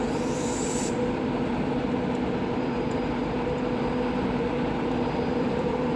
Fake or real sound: fake